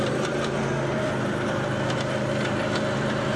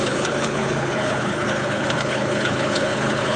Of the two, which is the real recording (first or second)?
first